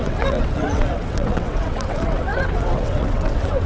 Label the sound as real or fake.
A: fake